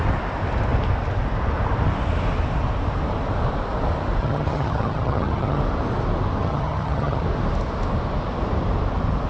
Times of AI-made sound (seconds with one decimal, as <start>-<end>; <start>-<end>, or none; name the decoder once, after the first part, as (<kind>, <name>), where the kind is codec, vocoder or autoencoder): 4.2-5.6 (vocoder, HiFi-GAN); 6.4-7.2

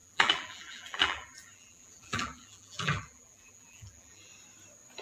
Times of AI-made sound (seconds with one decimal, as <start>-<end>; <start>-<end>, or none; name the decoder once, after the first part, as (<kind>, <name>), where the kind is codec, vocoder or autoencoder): 0.0-4.3 (vocoder, BigVGAN v2)

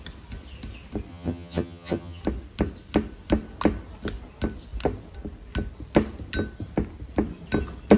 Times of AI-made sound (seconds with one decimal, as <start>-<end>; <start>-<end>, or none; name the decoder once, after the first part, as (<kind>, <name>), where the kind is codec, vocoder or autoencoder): 1.1-2.2 (vocoder, HiFi-GAN)

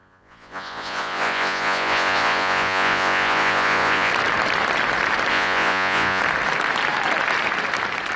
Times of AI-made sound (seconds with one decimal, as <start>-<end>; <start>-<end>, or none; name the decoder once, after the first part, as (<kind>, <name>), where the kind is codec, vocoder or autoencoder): 0.0-4.1 (vocoder, Vocos); 5.3-6.2